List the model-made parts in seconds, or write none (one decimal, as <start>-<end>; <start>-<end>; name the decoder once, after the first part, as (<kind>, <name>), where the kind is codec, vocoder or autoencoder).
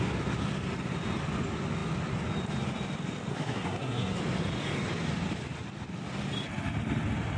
3.3-4.2 (codec, SNAC)